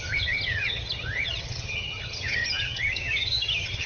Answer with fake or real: fake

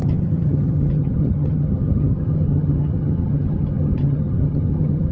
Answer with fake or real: fake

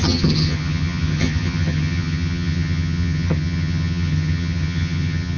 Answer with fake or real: fake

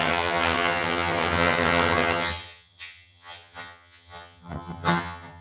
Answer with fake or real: fake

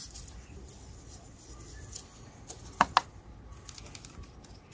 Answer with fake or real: real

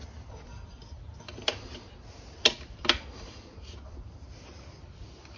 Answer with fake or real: real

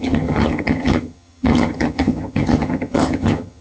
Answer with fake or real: fake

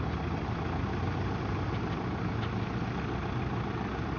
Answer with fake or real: real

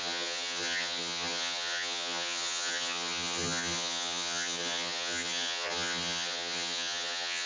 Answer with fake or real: fake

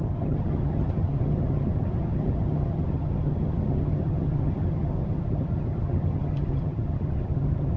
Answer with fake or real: fake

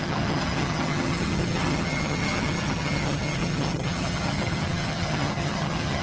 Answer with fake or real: fake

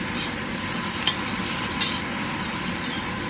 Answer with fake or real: real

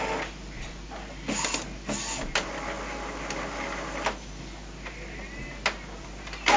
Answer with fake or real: real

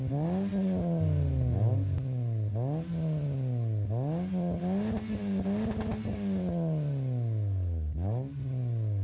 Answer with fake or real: real